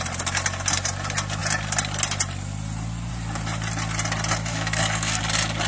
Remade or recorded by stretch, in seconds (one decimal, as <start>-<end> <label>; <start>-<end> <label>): 0.0-4.5 recorded; 4.5-5.2 remade; 5.2-5.7 recorded